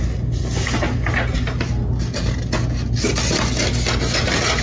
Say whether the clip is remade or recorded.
recorded